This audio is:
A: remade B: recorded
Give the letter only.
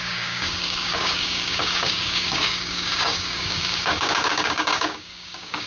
A